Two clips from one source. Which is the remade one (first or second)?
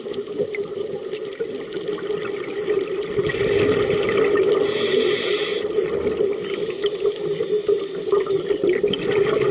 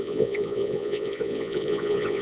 second